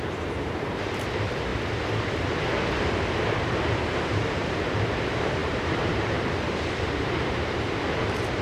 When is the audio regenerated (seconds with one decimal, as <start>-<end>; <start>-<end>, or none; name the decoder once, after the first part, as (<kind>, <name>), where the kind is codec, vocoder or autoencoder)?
0.0-1.5 (vocoder, BigVGAN v2); 3.3-8.4